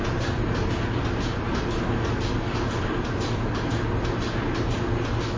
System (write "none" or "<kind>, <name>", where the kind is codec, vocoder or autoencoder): none